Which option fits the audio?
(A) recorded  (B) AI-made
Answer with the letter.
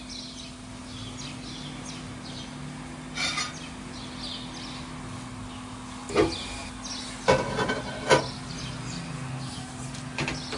A